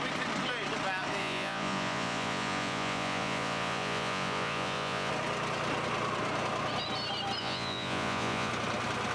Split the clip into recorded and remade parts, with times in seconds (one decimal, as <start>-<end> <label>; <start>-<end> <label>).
0.0-1.2 recorded; 1.2-5.1 remade; 5.1-7.4 recorded; 7.4-8.5 remade; 8.5-9.1 recorded